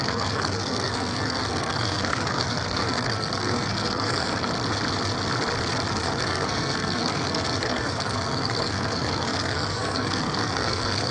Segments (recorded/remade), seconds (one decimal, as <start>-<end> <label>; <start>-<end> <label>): 0.0-4.5 remade; 4.5-5.9 recorded; 5.9-11.1 remade